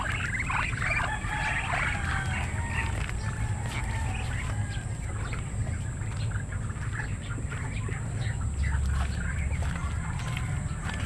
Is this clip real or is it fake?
real